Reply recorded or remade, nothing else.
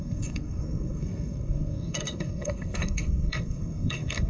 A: remade